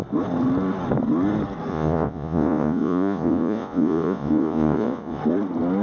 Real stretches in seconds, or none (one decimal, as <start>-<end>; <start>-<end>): 0.0-1.7; 5.2-5.8